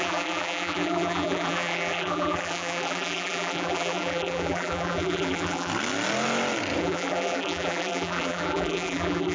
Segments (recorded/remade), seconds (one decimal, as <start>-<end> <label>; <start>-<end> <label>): 0.0-5.7 remade; 5.7-6.8 recorded; 6.8-9.3 remade